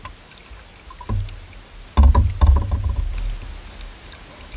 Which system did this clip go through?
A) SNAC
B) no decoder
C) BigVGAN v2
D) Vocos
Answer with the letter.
B